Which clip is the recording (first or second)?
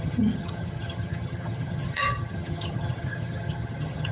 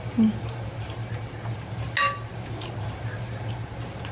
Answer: second